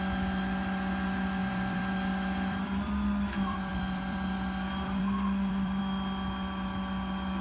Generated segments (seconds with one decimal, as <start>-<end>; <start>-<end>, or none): 1.4-5.8